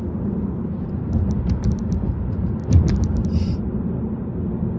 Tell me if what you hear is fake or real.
real